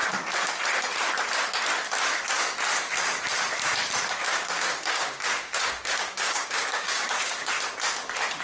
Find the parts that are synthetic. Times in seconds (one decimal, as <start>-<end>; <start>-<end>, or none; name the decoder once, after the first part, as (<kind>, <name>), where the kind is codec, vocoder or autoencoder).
4.3-7.5 (codec, DAC)